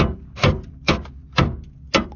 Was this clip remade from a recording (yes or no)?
no